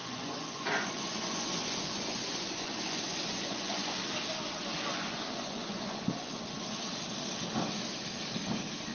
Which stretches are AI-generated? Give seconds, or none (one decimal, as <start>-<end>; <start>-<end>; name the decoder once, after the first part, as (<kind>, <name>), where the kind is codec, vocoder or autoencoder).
0.0-4.0 (vocoder, Vocos); 4.7-6.8